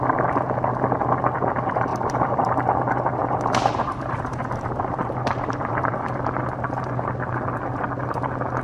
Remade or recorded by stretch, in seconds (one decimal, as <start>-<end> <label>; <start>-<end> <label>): 0.0-1.9 recorded; 1.9-2.5 remade; 2.5-3.2 recorded; 3.2-5.9 remade; 5.9-8.6 recorded